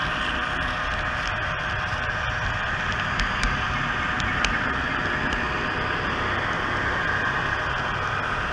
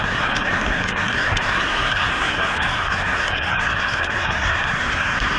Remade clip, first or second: second